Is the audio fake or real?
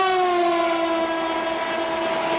real